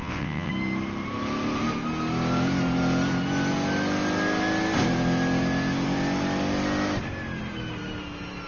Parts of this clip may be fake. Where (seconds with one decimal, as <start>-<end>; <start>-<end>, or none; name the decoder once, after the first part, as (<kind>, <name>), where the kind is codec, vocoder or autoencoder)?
0.0-0.5 (vocoder, WaveNeXt)